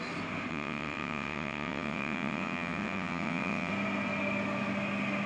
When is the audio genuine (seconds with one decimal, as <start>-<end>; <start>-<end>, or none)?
0.0-0.5; 3.7-5.3